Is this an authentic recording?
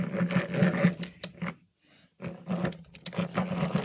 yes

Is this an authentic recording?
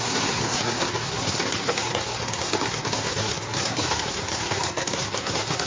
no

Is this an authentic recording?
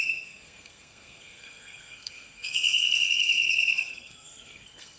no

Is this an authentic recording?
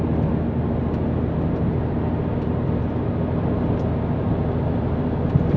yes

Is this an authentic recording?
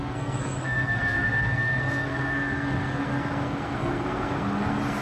no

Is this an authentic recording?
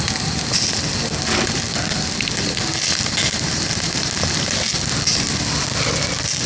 yes